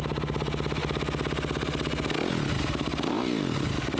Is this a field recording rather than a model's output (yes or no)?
yes